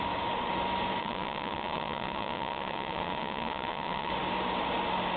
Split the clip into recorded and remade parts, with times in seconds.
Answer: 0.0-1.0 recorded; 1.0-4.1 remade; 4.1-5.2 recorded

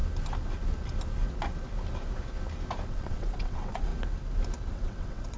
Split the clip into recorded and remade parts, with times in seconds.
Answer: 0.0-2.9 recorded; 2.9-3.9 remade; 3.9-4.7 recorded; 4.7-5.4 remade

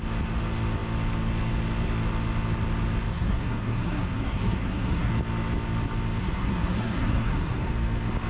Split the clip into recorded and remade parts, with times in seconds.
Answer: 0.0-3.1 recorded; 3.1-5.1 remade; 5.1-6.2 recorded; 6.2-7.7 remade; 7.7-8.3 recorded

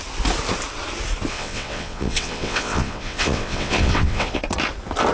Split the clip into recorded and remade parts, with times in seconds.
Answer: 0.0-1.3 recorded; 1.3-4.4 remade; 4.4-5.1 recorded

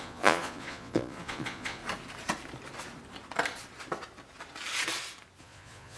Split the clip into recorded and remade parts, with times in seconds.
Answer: 0.0-1.8 remade; 1.8-5.4 recorded; 5.4-6.0 remade

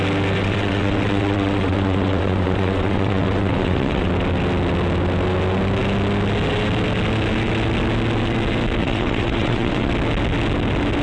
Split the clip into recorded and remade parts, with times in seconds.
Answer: 0.0-0.4 recorded; 0.4-4.1 remade; 4.1-8.8 recorded; 8.8-9.9 remade; 9.9-11.0 recorded

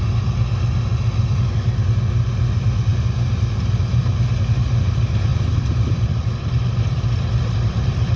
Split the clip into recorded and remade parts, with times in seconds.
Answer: 0.0-0.9 recorded; 0.9-1.4 remade; 1.4-5.3 recorded; 5.3-8.2 remade

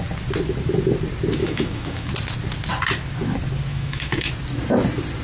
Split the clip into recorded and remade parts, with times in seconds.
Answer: 0.0-1.4 recorded; 1.4-2.1 remade; 2.1-3.7 recorded; 3.7-4.3 remade; 4.3-5.2 recorded